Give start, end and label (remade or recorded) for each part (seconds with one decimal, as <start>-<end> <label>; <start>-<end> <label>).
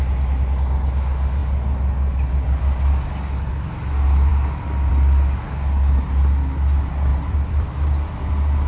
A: 0.0-7.1 recorded; 7.1-8.7 remade